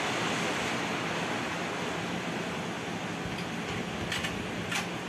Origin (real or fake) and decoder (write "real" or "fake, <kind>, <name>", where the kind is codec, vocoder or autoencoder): real